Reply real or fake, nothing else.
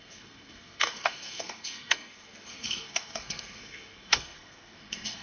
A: fake